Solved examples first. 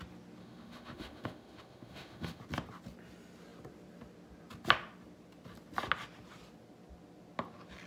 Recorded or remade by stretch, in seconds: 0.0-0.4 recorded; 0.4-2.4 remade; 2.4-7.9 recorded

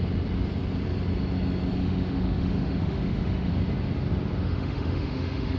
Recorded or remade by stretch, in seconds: 0.0-1.8 recorded; 1.8-3.5 remade; 3.5-4.4 recorded; 4.4-5.6 remade

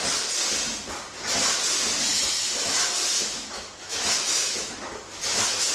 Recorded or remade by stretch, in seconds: 0.0-2.1 recorded; 2.1-5.7 remade

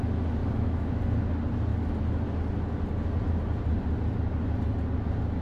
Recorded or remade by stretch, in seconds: 0.0-0.4 recorded; 0.4-1.0 remade; 1.0-5.4 recorded

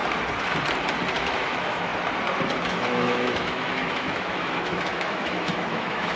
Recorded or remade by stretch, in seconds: 0.0-1.2 recorded; 1.2-1.9 remade; 1.9-2.7 recorded; 2.7-6.2 remade